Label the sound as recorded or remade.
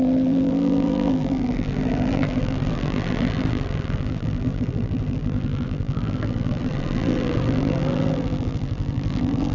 remade